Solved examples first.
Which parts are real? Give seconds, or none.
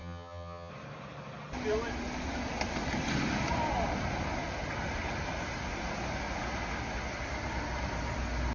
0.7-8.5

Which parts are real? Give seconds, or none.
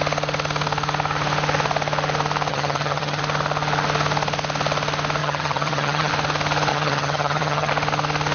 0.0-2.5; 3.2-5.2; 6.1-6.7; 7.7-8.3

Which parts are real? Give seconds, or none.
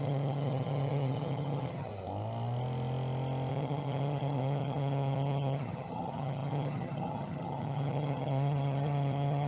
1.9-3.5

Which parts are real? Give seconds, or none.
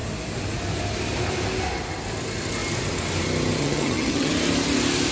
0.0-3.6; 4.3-5.1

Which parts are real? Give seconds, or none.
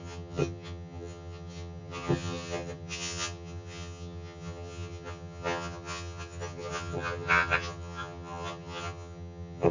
none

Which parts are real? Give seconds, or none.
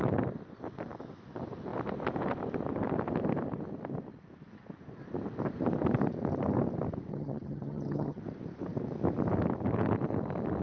0.0-7.1; 8.2-10.6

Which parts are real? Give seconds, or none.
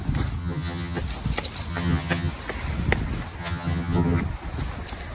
0.0-0.4; 1.0-1.7; 2.3-3.4; 4.2-5.1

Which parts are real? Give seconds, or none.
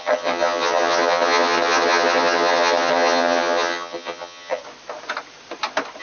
4.6-6.0